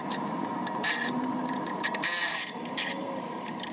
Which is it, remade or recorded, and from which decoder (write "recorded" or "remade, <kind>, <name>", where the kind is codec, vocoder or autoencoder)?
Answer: remade, vocoder, BigVGAN v2